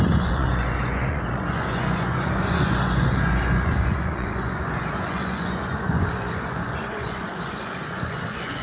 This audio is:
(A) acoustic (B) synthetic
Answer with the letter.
B